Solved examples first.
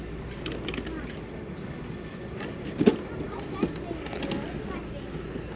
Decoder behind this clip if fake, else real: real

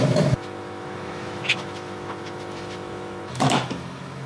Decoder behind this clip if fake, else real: fake, autoencoder, DAC-VAE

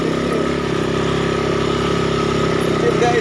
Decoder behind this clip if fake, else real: real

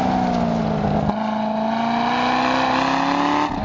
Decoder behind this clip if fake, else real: real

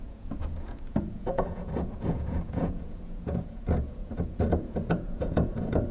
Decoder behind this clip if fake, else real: fake, vocoder, Vocos